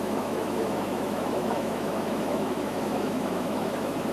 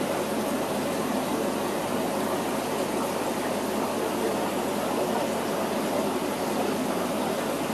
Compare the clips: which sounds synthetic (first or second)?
first